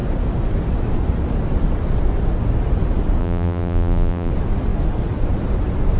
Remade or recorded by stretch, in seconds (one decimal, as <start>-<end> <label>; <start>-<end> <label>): 0.0-3.2 recorded; 3.2-4.3 remade; 4.3-6.0 recorded